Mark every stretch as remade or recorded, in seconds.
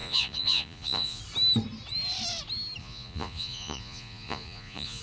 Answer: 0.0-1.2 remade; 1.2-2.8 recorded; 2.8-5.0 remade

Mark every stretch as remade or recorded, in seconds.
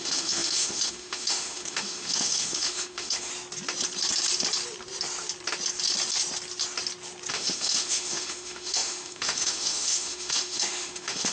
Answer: 0.0-3.3 remade; 3.3-7.3 recorded; 7.3-11.3 remade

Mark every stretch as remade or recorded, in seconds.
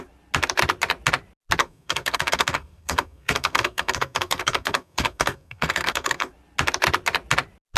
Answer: 0.0-1.6 recorded; 1.6-6.3 remade; 6.3-7.8 recorded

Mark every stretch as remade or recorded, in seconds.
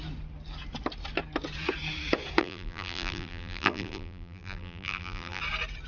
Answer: 0.0-2.4 recorded; 2.4-5.4 remade; 5.4-5.9 recorded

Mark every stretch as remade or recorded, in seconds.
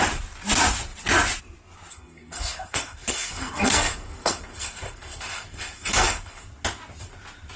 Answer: 0.0-1.9 recorded; 1.9-6.5 remade; 6.5-7.6 recorded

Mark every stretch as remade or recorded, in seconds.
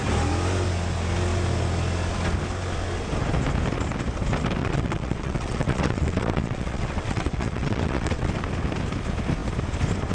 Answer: 0.0-4.6 recorded; 4.6-8.3 remade; 8.3-10.1 recorded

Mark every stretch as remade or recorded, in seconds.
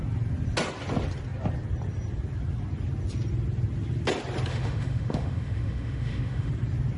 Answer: 0.0-4.5 recorded; 4.5-6.5 remade; 6.5-7.0 recorded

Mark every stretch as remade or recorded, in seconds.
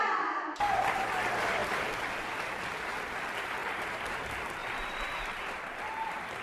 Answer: 0.0-3.6 recorded; 3.6-4.1 remade; 4.1-4.6 recorded; 4.6-6.4 remade